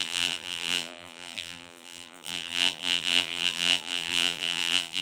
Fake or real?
fake